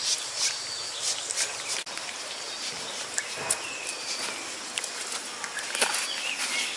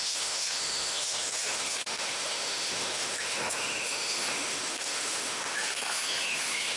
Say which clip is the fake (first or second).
second